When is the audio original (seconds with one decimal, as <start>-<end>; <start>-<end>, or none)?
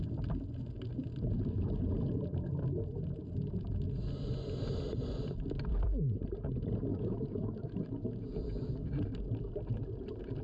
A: 0.0-6.9; 8.9-10.4